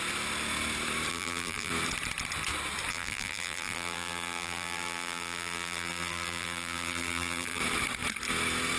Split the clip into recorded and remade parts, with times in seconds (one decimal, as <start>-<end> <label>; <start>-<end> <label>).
0.0-1.1 recorded; 1.1-1.7 remade; 1.7-2.9 recorded; 2.9-7.6 remade; 7.6-8.8 recorded

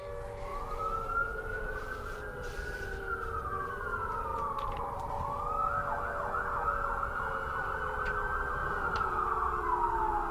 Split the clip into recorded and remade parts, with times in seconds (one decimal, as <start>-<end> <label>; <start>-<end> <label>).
0.0-0.5 recorded; 0.5-3.0 remade; 3.0-4.3 recorded; 4.3-5.5 remade; 5.5-8.6 recorded; 8.6-9.7 remade; 9.7-10.3 recorded